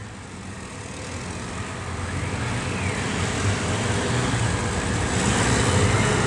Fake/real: real